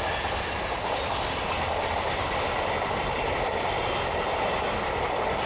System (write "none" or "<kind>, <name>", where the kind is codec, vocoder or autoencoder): none